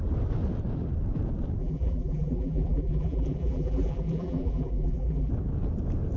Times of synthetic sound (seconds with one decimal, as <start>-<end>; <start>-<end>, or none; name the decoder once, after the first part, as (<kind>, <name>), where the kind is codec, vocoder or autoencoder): 1.6-5.3 (vocoder, BigVGAN v2)